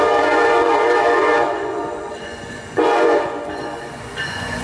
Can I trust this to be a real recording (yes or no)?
no